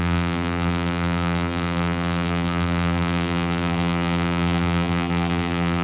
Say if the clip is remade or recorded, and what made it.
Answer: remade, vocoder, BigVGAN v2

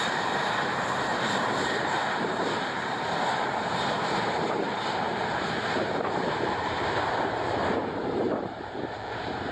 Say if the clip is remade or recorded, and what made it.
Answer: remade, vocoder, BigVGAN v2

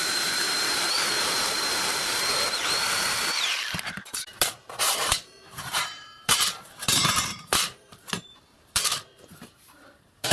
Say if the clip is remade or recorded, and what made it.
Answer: remade, vocoder, BigVGAN v2